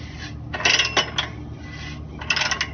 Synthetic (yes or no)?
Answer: no